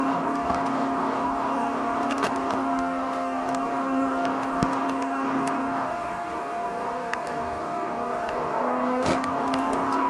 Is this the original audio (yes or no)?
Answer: no